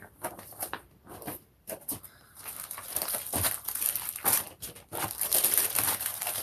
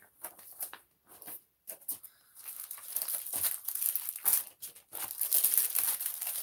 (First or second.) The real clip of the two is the second